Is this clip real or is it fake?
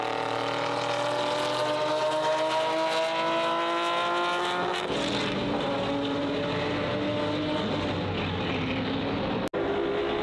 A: real